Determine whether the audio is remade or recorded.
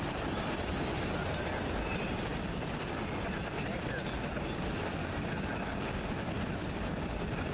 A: recorded